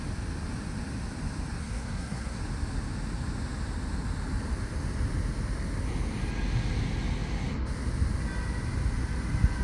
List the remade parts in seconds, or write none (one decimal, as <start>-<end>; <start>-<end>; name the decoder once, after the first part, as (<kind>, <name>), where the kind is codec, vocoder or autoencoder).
1.6-2.4 (codec, SNAC)